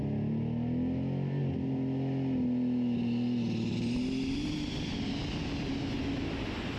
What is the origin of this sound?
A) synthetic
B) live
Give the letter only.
B